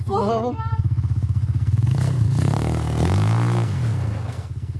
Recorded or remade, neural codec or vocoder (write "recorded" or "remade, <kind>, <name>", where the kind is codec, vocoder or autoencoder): remade, codec, SNAC